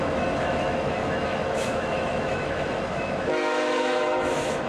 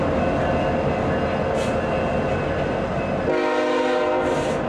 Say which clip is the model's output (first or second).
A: first